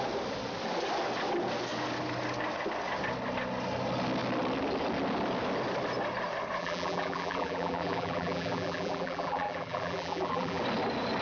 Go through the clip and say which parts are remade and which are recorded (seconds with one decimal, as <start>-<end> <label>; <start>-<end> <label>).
0.0-6.6 recorded; 6.6-10.6 remade; 10.6-11.2 recorded